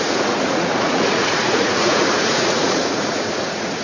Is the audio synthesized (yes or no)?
yes